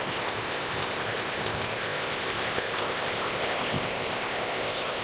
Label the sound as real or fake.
fake